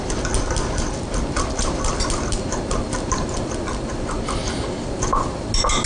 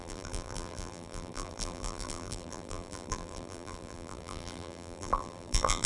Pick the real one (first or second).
first